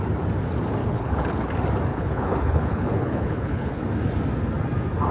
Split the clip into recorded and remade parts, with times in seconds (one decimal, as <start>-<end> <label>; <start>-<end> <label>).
0.0-0.8 recorded; 0.8-1.5 remade; 1.5-1.9 recorded; 1.9-3.8 remade; 3.8-5.1 recorded